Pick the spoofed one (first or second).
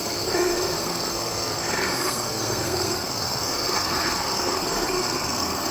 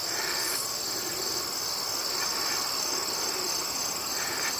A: first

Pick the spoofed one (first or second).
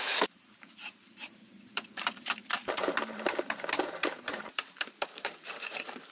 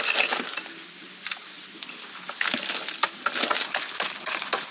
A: first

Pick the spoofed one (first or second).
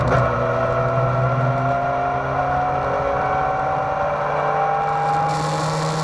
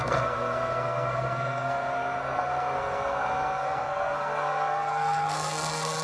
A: second